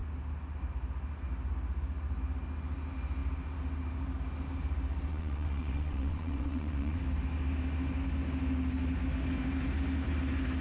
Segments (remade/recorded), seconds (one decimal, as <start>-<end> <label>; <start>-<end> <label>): 0.0-5.1 recorded; 5.1-7.0 remade; 7.0-10.6 recorded